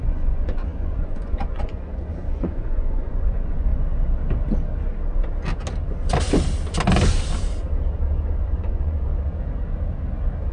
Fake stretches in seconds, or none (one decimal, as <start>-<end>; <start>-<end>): 0.0-3.7; 8.3-9.1